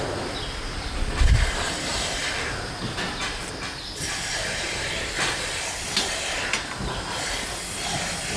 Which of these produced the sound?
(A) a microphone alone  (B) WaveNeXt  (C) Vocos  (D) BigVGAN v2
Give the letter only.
A